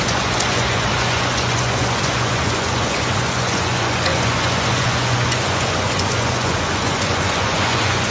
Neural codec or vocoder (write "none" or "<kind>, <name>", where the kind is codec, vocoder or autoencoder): vocoder, Vocos